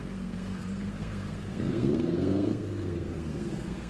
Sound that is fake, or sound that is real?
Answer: fake